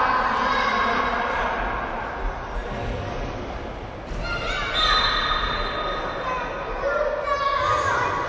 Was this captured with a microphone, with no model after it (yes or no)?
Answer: yes